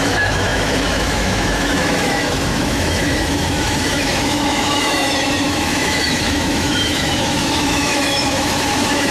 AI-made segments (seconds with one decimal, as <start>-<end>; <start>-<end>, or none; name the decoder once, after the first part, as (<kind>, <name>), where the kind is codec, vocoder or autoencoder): 0.0-9.1 (autoencoder, DAC-VAE)